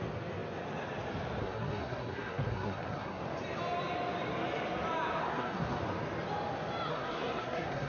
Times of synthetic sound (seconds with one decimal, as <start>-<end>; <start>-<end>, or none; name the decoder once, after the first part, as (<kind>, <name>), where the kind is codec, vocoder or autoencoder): 1.4-3.2 (codec, SNAC); 5.2-5.8; 6.9-7.9